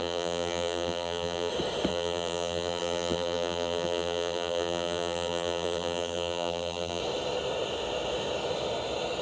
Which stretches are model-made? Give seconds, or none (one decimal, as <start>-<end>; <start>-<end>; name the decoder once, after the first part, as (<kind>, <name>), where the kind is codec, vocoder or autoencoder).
0.0-1.5 (vocoder, BigVGAN v2); 1.9-7.0